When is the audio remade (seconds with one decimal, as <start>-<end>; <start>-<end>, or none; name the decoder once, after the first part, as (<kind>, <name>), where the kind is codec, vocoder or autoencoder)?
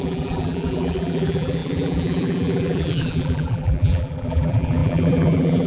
0.0-5.7 (vocoder, BigVGAN v2)